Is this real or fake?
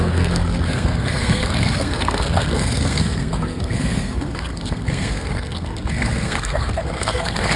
fake